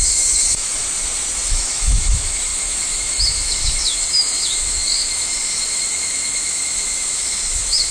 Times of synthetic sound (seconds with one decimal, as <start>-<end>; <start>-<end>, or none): 0.0-0.8; 1.5-7.9